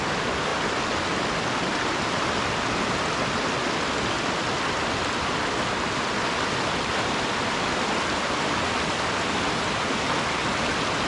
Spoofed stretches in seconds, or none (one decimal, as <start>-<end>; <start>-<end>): none